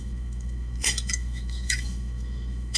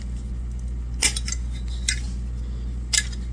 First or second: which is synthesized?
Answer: first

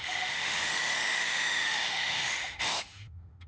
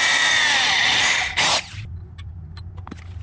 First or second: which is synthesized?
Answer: first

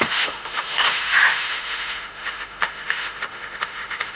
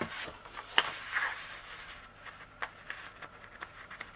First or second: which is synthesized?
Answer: first